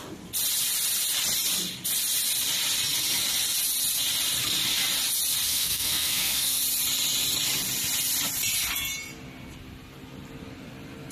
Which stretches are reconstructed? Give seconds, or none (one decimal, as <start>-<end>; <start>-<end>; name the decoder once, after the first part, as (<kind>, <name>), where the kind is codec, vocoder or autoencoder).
5.5-6.6 (codec, SNAC)